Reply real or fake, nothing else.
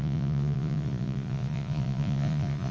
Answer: fake